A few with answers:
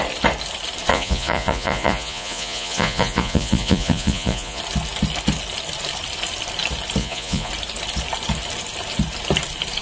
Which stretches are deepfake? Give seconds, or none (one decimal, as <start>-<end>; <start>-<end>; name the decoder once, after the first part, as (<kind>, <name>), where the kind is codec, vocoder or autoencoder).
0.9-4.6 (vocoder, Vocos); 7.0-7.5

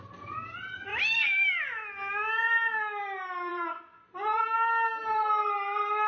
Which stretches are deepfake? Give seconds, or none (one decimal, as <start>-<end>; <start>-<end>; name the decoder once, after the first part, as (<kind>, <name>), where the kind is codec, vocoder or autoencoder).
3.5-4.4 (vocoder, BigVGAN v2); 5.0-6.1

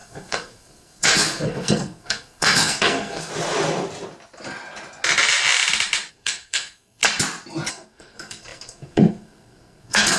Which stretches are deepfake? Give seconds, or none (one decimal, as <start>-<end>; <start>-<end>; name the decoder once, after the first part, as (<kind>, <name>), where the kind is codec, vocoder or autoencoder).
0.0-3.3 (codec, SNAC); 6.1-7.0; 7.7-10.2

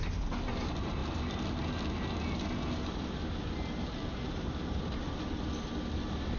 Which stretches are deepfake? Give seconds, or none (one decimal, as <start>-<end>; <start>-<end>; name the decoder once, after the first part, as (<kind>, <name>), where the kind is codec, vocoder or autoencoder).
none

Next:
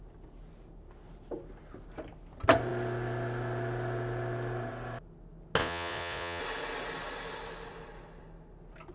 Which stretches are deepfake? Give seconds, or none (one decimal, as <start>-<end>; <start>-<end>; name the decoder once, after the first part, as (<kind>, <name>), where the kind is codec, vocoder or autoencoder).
5.6-6.4 (vocoder, Vocos)

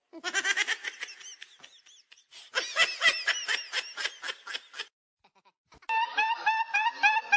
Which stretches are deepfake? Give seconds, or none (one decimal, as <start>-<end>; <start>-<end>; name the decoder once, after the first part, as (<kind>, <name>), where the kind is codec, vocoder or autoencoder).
none

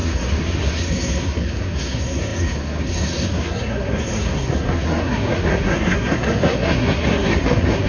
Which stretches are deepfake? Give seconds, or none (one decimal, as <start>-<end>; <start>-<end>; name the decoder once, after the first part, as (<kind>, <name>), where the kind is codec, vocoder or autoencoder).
0.0-7.9 (codec, SNAC)